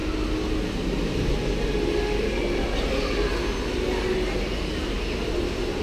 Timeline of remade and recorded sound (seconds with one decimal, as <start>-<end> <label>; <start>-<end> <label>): 0.0-5.8 recorded